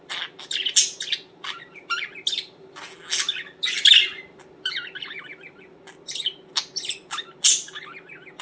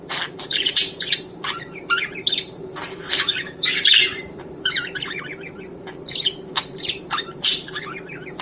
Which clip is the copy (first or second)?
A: second